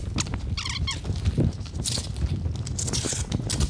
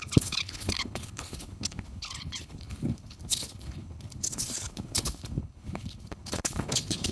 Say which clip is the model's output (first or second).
second